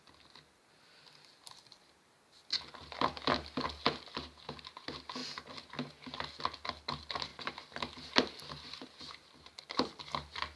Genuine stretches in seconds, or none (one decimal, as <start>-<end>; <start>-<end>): 0.0-10.6